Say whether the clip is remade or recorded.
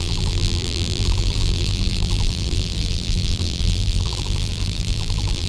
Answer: remade